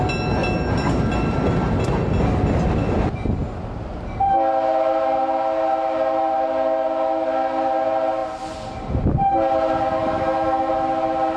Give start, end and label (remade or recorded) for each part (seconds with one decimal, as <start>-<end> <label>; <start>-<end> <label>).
0.0-10.0 recorded; 10.0-10.7 remade; 10.7-11.4 recorded